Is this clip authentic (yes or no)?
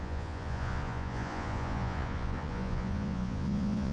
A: no